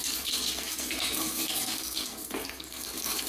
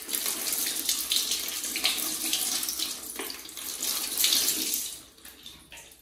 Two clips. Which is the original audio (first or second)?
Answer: second